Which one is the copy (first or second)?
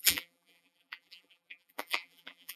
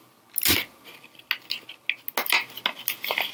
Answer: first